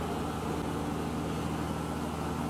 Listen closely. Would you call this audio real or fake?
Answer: real